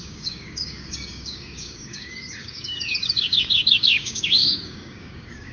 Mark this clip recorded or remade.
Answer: remade